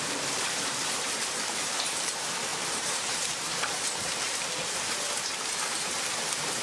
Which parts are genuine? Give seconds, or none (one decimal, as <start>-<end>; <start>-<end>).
none